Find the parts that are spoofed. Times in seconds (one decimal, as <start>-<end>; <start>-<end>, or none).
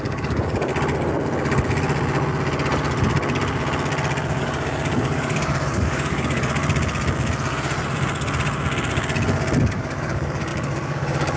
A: 0.0-0.7; 4.4-6.6; 9.7-11.4